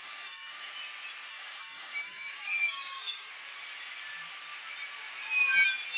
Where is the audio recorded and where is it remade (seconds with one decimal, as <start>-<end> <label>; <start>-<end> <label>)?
0.0-0.7 remade; 0.7-1.3 recorded; 1.3-3.3 remade; 3.3-6.0 recorded